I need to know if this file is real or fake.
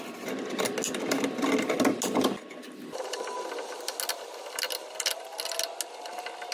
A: real